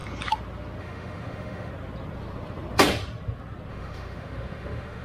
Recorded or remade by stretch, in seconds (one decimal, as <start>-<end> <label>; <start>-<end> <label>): 0.0-0.8 recorded; 0.8-1.7 remade; 1.7-3.7 recorded; 3.7-5.0 remade